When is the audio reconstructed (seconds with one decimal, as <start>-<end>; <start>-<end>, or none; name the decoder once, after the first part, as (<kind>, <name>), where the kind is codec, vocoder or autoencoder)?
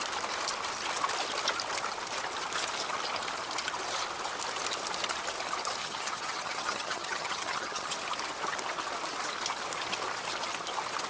5.8-7.9 (vocoder, HiFi-GAN)